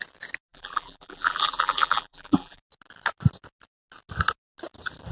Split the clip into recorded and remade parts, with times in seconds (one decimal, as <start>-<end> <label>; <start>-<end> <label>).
0.0-0.5 recorded; 0.5-2.6 remade; 2.6-5.1 recorded